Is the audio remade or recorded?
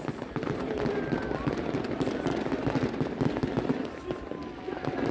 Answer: recorded